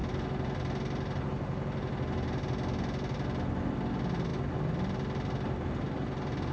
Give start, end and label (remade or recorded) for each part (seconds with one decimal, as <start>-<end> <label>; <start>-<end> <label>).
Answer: 0.0-6.5 recorded